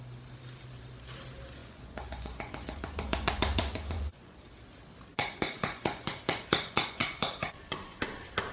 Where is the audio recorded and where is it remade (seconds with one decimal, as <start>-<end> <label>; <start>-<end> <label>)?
0.0-1.6 recorded; 1.6-4.4 remade; 4.4-5.1 recorded; 5.1-8.0 remade; 8.0-8.5 recorded